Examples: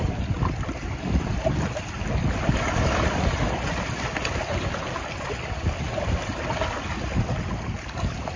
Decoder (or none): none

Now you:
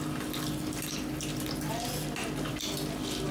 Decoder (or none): none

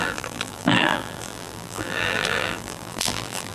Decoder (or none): vocoder, BigVGAN v2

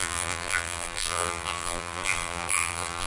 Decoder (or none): vocoder, BigVGAN v2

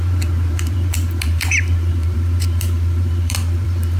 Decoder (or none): vocoder, BigVGAN v2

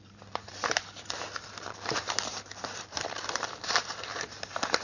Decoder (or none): vocoder, BigVGAN v2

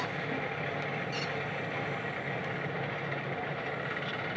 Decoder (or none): none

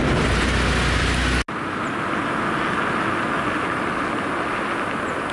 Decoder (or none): none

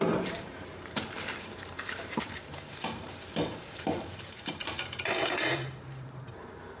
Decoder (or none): vocoder, BigVGAN v2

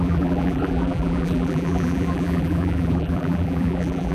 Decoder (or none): vocoder, BigVGAN v2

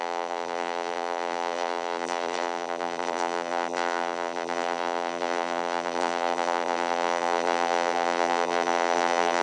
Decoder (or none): vocoder, BigVGAN v2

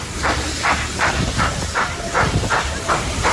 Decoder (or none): vocoder, BigVGAN v2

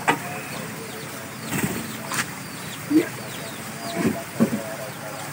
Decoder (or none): vocoder, BigVGAN v2